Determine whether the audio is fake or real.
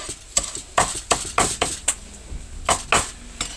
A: real